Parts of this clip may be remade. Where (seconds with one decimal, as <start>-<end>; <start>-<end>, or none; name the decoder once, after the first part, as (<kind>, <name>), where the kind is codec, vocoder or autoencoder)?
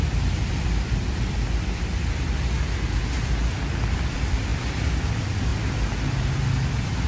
0.5-1.9 (vocoder, BigVGAN v2); 4.1-5.5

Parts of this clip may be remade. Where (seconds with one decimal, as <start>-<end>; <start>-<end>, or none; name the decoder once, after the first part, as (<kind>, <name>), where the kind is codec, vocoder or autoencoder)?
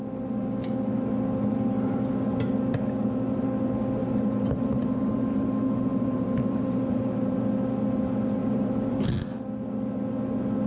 4.0-7.4 (vocoder, BigVGAN v2); 8.4-9.1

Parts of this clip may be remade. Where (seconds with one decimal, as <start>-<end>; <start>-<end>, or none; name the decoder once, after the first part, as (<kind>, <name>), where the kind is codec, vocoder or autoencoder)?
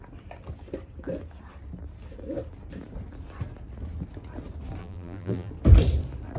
4.8-5.5 (vocoder, BigVGAN v2)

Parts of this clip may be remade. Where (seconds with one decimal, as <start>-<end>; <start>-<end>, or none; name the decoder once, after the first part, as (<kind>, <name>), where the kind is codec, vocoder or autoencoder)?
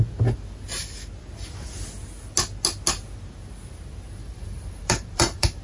4.2-5.6 (vocoder, BigVGAN v2)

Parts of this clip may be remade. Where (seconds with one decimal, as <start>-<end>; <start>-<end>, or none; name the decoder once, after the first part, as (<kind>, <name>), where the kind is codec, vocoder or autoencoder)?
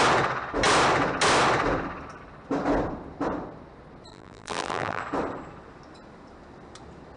4.1-5.0 (vocoder, BigVGAN v2)